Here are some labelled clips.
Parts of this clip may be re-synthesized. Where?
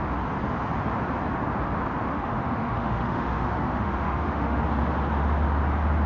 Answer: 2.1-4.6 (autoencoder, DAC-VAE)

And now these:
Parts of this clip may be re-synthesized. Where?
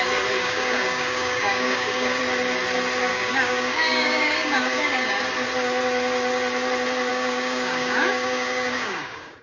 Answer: 0.4-2.2 (codec, DAC); 3.1-5.2; 7.1-9.4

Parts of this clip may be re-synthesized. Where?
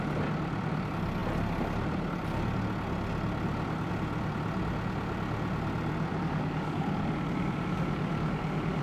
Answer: 6.1-8.8 (codec, DAC)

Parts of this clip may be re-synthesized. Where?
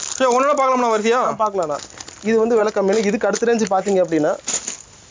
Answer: none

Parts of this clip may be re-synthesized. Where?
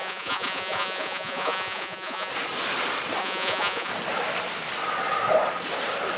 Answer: 0.0-2.3 (vocoder, Vocos); 3.2-3.9